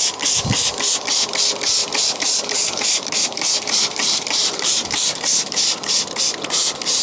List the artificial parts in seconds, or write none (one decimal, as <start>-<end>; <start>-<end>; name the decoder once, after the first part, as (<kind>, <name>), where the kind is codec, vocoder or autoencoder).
1.8-6.0 (vocoder, BigVGAN v2)